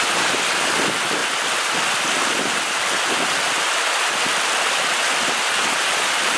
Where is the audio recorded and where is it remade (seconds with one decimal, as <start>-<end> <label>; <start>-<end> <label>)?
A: 0.0-6.4 recorded